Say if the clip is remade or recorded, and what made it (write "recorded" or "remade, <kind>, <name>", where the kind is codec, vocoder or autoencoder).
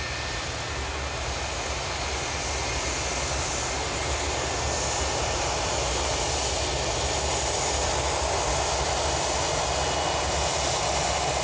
recorded